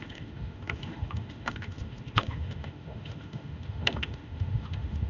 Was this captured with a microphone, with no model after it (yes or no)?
no